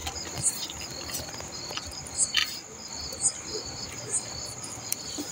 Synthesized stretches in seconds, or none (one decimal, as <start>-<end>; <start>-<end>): none